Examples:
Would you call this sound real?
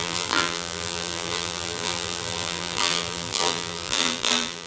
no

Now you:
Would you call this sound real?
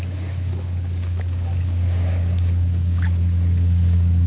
no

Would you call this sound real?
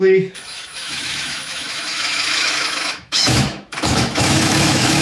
no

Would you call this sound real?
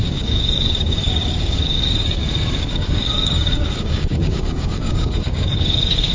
no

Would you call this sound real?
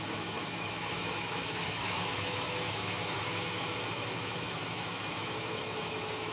no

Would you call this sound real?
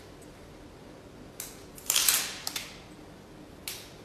yes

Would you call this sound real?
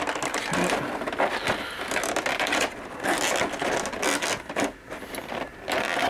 yes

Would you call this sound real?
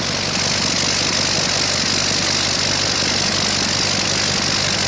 yes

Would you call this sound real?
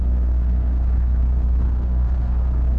no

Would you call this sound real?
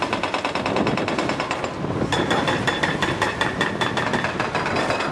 yes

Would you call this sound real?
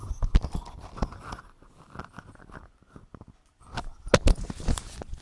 yes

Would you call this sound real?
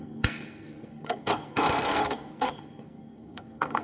no